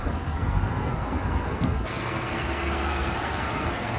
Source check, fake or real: fake